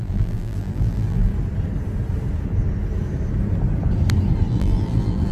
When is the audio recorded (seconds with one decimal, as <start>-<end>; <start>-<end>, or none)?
1.3-4.5